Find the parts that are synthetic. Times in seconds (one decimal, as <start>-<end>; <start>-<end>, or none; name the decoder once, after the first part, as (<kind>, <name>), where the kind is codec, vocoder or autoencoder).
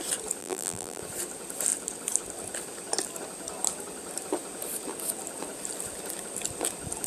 0.4-1.0 (vocoder, BigVGAN v2)